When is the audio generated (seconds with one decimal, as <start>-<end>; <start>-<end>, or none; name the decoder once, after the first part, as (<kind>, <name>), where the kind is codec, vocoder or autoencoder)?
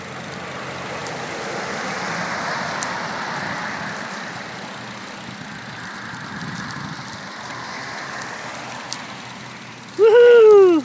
none